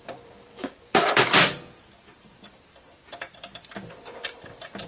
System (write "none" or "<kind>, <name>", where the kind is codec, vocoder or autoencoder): vocoder, BigVGAN v2